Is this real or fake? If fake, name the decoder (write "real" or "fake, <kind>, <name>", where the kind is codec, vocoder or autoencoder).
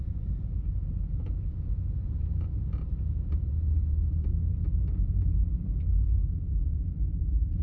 fake, vocoder, BigVGAN v2